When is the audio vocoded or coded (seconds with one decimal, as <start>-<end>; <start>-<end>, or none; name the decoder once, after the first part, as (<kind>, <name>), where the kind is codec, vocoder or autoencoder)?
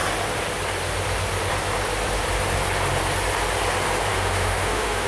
4.1-5.1 (autoencoder, DAC-VAE)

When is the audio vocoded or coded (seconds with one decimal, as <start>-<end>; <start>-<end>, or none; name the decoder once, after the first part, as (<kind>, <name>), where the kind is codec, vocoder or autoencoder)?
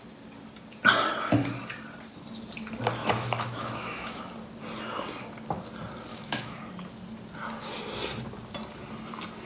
3.0-4.2 (autoencoder, DAC-VAE); 6.1-6.6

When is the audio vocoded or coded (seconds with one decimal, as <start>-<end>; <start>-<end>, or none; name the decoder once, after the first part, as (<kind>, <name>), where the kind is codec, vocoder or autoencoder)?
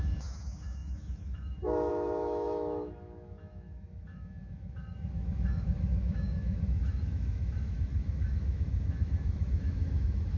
0.0-10.4 (autoencoder, DAC-VAE)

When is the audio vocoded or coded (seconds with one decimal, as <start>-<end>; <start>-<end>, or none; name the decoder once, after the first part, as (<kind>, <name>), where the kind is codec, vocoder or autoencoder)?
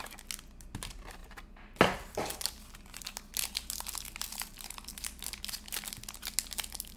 none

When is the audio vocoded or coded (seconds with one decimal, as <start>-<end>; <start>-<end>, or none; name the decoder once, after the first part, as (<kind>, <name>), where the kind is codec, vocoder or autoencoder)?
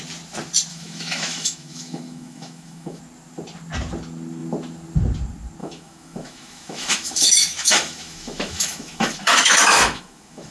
0.7-3.0 (autoencoder, DAC-VAE); 5.6-10.5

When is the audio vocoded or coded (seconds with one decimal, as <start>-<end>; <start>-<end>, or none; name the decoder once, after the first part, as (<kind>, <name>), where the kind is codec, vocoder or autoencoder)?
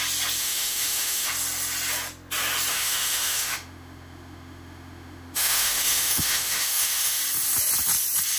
0.4-1.3 (autoencoder, DAC-VAE); 2.7-7.2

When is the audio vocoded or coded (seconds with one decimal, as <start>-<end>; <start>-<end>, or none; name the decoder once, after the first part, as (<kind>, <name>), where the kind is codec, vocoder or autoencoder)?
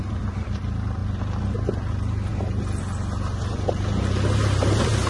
none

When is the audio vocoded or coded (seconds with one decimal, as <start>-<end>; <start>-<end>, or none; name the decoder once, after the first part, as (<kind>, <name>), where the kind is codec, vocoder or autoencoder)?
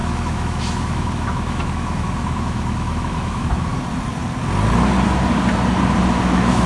0.0-3.7 (autoencoder, DAC-VAE); 6.2-6.7